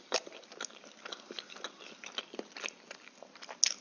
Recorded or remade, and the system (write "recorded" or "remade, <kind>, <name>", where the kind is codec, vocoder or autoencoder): recorded